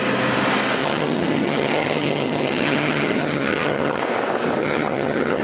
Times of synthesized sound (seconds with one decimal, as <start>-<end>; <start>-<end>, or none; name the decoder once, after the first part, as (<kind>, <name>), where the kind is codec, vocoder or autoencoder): 0.8-4.0 (vocoder, HiFi-GAN); 4.6-5.4